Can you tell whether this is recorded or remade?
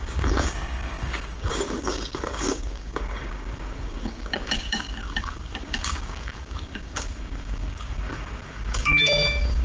remade